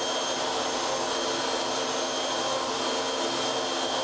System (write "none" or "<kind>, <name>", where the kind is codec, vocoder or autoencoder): none